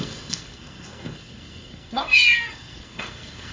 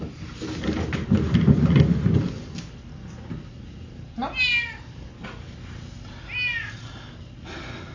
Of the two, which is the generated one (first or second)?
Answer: first